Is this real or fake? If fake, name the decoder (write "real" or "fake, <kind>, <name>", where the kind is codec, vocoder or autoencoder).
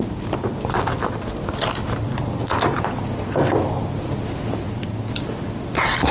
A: real